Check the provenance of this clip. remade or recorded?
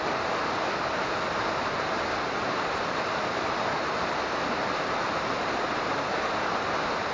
remade